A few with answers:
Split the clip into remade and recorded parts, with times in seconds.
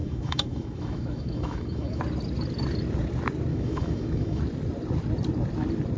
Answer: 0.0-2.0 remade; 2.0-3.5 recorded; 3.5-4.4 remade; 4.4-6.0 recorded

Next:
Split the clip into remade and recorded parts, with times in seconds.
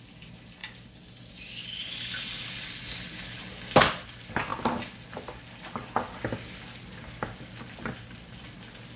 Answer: 0.0-9.0 recorded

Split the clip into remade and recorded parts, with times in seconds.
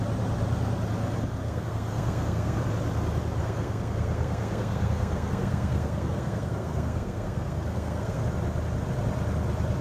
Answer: 0.0-1.4 recorded; 1.4-2.6 remade; 2.6-3.4 recorded; 3.4-8.2 remade; 8.2-9.8 recorded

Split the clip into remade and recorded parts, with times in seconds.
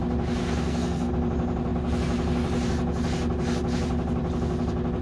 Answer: 0.0-0.4 recorded; 0.4-1.1 remade; 1.1-5.0 recorded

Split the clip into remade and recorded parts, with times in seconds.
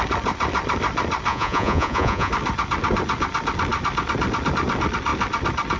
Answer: 0.0-1.3 recorded; 1.3-2.3 remade; 2.3-5.8 recorded